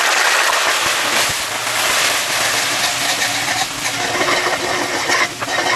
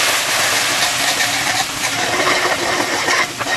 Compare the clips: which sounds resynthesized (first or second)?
second